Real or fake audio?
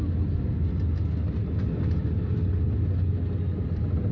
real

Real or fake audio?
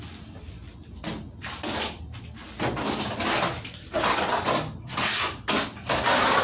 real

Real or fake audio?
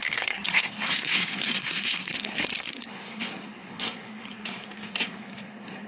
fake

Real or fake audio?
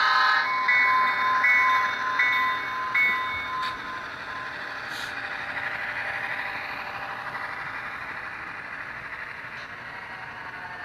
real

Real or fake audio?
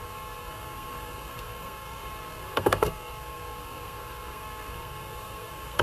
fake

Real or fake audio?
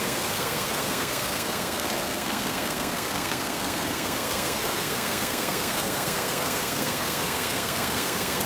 fake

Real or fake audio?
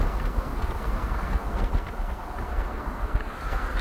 fake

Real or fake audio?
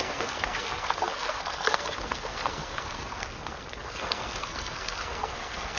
fake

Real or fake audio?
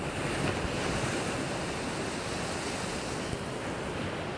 real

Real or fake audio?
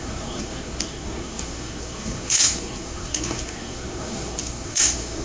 fake